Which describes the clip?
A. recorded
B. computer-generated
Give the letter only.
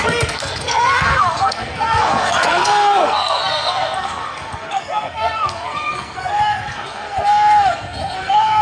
B